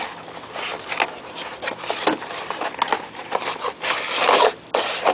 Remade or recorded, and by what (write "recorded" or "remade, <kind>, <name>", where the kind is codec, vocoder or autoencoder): recorded